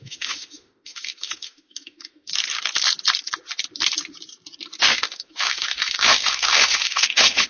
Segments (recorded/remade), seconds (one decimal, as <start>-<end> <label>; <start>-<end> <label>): 0.0-2.3 remade; 2.3-4.8 recorded; 4.8-7.5 remade